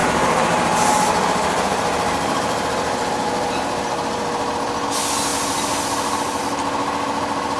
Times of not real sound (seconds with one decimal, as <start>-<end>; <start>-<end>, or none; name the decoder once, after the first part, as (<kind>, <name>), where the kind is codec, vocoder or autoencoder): 0.0-3.8 (vocoder, BigVGAN v2)